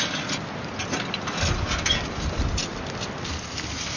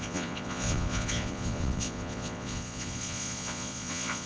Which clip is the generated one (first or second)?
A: second